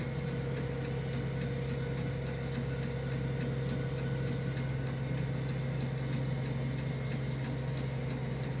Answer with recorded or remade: recorded